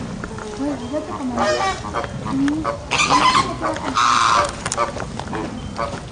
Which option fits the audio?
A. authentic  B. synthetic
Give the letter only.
A